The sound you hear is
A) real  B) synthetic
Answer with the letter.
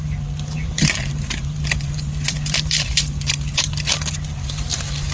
B